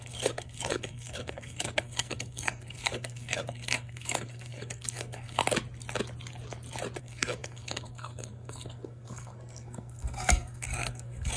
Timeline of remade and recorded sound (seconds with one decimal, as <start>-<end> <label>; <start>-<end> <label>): 0.0-5.4 remade; 5.4-7.0 recorded; 7.0-11.4 remade